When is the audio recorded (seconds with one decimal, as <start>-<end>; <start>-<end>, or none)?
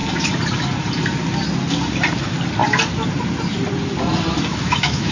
0.0-4.5